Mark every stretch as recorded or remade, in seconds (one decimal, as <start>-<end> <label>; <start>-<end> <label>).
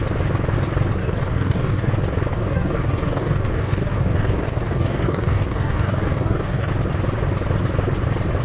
0.0-1.0 recorded; 1.0-1.9 remade; 1.9-2.3 recorded; 2.3-6.7 remade; 6.7-8.4 recorded